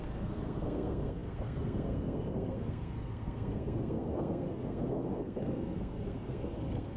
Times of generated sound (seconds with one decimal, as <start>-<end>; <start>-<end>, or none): 0.0-7.0